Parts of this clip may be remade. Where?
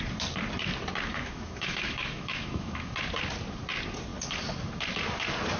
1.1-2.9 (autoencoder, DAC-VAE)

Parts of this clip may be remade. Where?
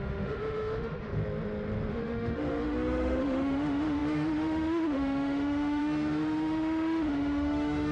0.0-1.2 (autoencoder, DAC-VAE); 1.9-7.9